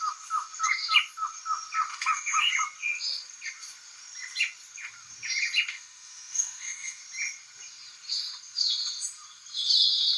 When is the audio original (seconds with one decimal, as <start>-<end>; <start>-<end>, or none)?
0.0-1.9; 2.5-5.7; 7.0-10.2

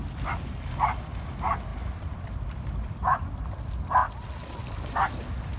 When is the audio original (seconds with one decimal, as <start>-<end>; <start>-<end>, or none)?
0.0-5.6